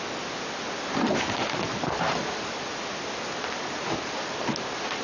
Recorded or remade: recorded